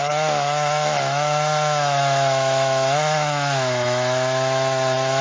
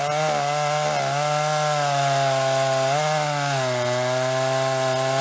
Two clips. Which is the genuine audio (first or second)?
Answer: second